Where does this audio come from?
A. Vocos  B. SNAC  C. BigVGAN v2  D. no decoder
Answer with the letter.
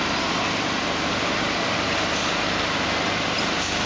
D